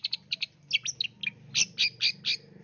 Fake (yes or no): no